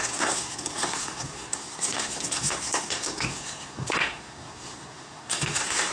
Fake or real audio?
fake